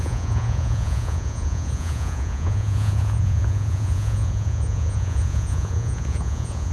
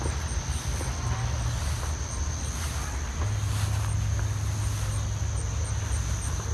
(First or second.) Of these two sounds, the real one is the second